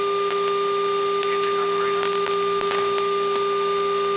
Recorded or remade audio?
recorded